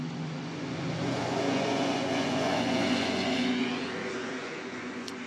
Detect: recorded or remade remade